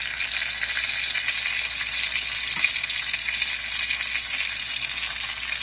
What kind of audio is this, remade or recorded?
recorded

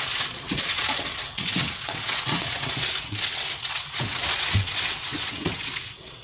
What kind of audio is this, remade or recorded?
remade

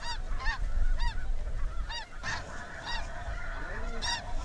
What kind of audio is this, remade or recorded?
recorded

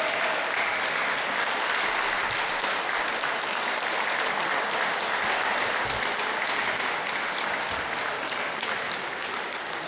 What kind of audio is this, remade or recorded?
recorded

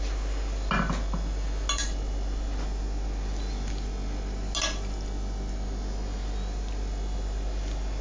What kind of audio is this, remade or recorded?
recorded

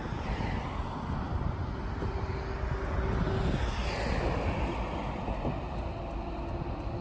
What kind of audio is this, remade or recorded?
recorded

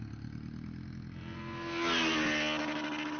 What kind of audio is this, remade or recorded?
recorded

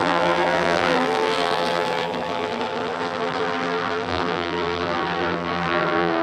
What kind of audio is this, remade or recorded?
remade